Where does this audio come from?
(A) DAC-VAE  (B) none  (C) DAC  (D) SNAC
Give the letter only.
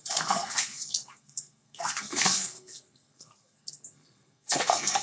D